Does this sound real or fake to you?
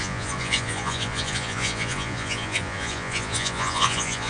fake